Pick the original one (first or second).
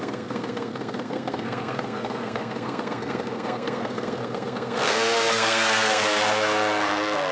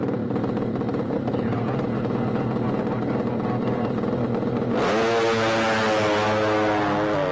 second